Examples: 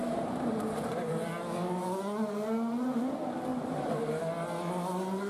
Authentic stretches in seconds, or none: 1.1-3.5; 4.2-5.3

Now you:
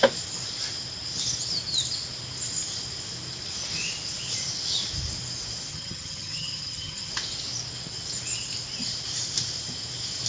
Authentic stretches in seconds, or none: 0.0-5.7; 7.1-10.3

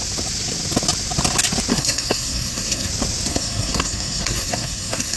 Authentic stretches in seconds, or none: 0.0-1.7; 2.9-3.3

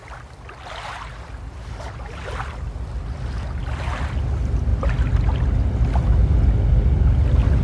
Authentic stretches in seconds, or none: 0.0-7.6